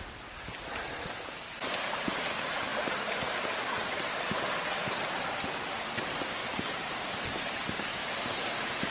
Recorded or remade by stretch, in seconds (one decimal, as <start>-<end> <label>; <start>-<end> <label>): 0.0-6.4 recorded; 6.4-7.2 remade; 7.2-7.9 recorded; 7.9-8.9 remade